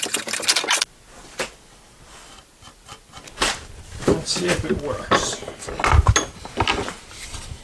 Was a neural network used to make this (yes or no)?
no